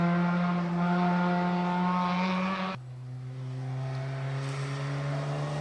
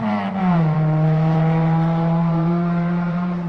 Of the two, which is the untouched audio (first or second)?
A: first